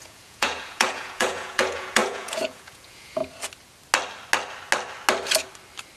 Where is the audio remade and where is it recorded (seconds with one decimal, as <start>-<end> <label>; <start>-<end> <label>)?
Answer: 0.0-3.2 remade; 3.2-6.0 recorded